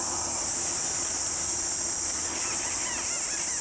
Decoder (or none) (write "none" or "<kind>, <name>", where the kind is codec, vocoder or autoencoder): none